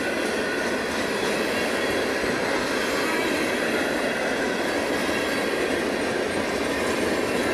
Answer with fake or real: real